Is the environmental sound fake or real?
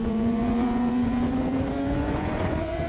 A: fake